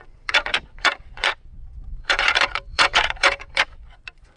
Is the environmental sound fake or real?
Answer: fake